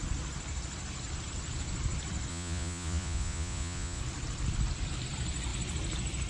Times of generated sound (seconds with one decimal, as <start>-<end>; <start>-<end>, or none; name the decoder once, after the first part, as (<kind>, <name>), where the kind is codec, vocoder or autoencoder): 2.3-4.0 (vocoder, Vocos)